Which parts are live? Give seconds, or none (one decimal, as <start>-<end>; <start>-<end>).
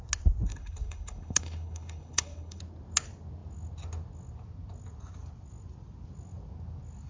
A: 0.0-0.5; 2.6-7.1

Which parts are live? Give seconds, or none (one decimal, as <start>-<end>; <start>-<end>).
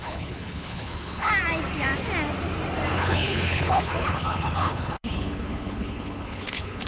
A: 1.3-2.9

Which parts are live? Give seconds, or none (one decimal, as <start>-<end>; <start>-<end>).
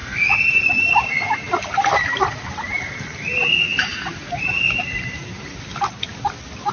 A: 0.0-6.7